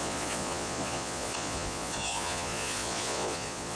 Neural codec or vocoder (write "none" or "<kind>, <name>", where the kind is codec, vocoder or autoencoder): vocoder, Vocos